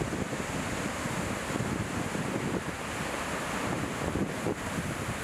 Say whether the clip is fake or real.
real